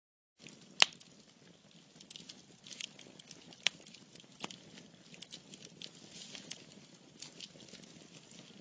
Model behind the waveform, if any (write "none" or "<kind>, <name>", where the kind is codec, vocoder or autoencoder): none